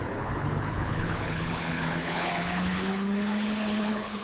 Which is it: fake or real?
fake